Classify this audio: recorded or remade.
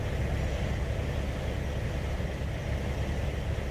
recorded